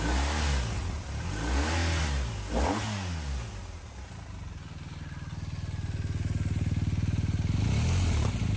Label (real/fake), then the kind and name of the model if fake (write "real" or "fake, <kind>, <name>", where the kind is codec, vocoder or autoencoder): real